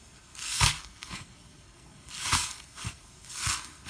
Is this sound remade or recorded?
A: remade